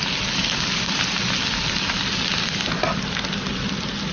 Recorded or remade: recorded